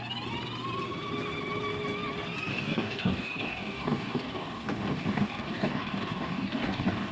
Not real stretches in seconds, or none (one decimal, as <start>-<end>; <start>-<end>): 2.5-7.1